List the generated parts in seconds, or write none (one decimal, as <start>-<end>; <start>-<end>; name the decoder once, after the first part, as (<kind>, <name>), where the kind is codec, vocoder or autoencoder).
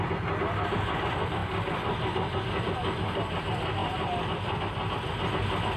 none